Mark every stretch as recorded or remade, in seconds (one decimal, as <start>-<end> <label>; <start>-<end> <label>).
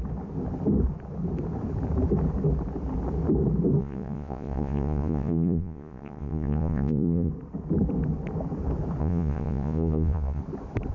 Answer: 0.0-3.8 recorded; 3.8-7.3 remade; 7.3-9.0 recorded; 9.0-10.4 remade; 10.4-10.9 recorded